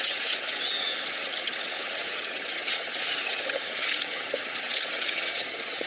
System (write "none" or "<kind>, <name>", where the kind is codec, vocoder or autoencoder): vocoder, HiFi-GAN